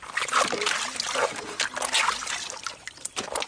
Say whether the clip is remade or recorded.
recorded